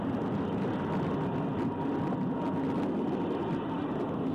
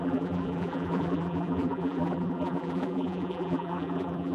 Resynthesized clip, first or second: second